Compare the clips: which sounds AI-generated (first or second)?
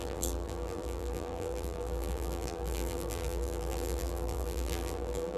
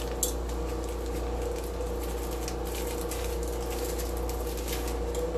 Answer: first